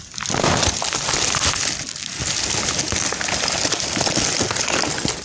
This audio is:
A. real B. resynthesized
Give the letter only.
A